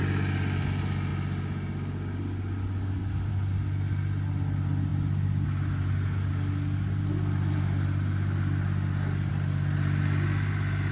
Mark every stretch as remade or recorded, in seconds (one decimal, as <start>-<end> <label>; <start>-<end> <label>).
0.0-10.9 recorded